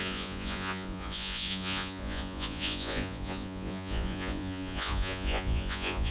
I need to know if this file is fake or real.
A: fake